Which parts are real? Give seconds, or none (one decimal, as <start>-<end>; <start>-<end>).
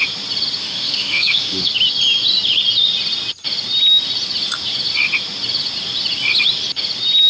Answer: 0.0-0.6; 1.7-7.3